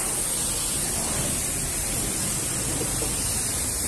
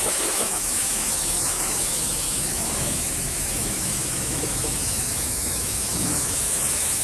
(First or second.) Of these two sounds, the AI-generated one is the second